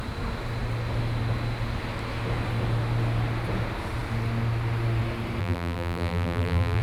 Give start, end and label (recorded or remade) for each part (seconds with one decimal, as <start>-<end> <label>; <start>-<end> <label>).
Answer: 0.0-5.4 recorded; 5.4-6.8 remade